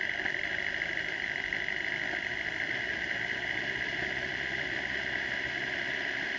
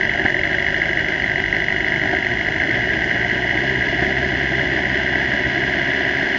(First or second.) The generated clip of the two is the first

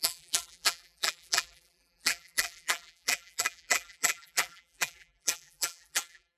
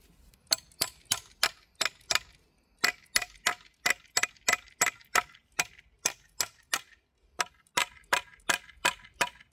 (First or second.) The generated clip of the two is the first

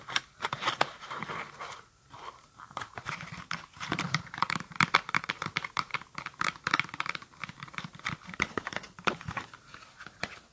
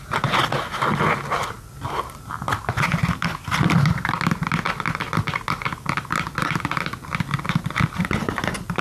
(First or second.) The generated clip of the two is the first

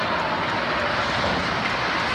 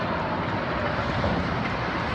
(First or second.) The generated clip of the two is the second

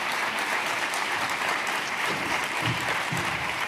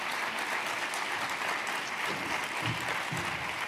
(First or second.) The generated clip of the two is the first